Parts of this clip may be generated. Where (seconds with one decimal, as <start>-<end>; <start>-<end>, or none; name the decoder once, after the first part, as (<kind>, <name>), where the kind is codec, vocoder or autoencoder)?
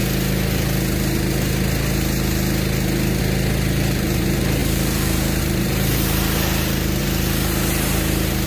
3.2-8.5 (vocoder, BigVGAN v2)